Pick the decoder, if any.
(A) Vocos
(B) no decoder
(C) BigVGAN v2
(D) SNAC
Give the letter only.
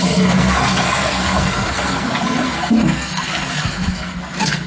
D